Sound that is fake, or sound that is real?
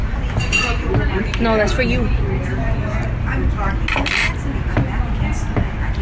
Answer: real